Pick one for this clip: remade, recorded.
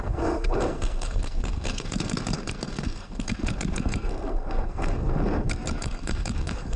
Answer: remade